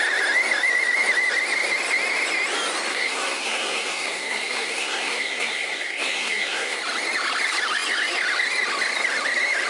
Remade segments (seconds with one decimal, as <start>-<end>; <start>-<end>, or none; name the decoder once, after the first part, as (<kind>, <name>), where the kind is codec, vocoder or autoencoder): 2.9-6.8 (codec, SNAC)

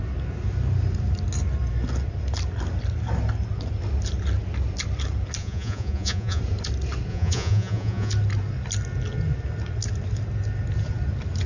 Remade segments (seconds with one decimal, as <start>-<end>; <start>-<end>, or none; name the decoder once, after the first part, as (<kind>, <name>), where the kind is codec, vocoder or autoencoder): 5.4-6.4 (vocoder, Vocos); 7.1-8.1

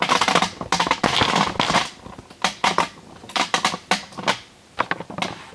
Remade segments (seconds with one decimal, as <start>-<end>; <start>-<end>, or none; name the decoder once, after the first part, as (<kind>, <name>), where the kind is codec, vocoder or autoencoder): 3.2-3.9 (vocoder, BigVGAN v2)

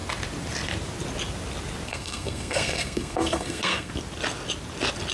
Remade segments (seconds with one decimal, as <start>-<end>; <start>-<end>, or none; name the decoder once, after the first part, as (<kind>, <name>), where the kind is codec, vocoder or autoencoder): 1.9-3.9 (codec, SNAC)

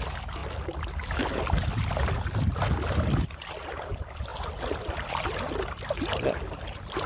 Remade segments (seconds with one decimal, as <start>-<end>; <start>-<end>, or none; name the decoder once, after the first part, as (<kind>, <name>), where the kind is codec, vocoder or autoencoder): none

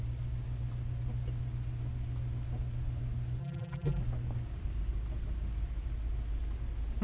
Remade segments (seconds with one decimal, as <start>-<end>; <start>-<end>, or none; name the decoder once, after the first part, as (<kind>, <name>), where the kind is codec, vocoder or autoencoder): 3.4-4.0 (vocoder, BigVGAN v2)